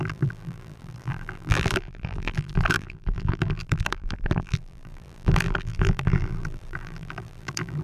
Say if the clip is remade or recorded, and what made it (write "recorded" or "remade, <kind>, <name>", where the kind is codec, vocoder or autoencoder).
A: remade, vocoder, BigVGAN v2